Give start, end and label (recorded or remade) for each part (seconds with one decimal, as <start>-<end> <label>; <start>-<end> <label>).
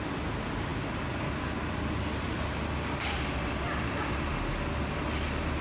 0.0-5.6 recorded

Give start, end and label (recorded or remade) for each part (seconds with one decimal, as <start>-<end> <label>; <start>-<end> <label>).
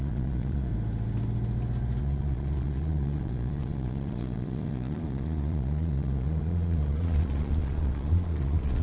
0.0-0.7 remade; 0.7-2.0 recorded; 2.0-8.8 remade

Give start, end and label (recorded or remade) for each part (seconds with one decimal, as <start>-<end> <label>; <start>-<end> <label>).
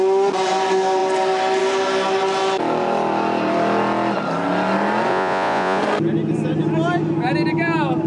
0.0-5.1 recorded; 5.1-5.8 remade; 5.8-8.1 recorded